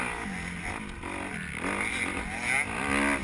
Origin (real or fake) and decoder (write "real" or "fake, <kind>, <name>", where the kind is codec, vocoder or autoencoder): real